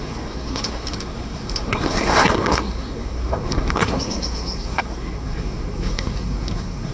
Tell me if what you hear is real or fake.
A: fake